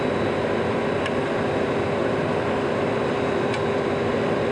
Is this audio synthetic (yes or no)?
no